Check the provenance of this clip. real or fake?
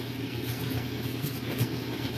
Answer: fake